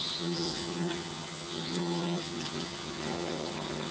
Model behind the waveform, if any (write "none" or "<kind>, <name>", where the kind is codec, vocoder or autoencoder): vocoder, HiFi-GAN